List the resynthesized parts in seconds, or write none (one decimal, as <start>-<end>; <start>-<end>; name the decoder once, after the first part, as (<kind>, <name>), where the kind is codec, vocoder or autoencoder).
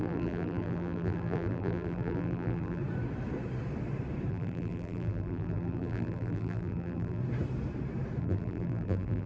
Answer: 0.0-2.8 (vocoder, BigVGAN v2); 4.3-7.2; 8.2-9.3